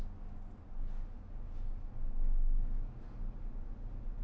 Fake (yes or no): no